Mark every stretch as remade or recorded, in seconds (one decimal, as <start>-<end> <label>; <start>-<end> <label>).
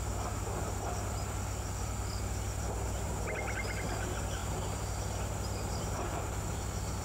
0.0-7.0 remade